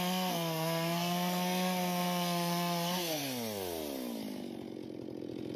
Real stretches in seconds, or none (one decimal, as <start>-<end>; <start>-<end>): 3.2-5.6